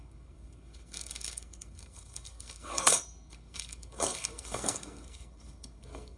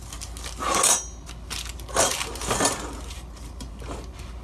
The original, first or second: second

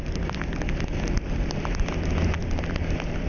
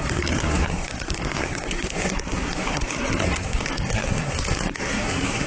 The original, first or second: first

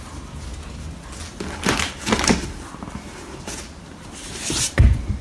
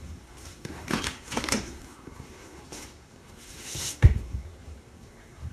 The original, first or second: first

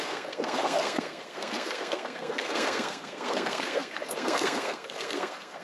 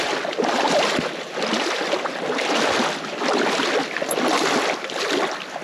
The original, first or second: second